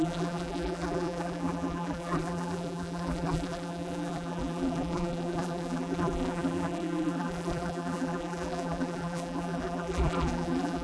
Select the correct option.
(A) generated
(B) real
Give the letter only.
A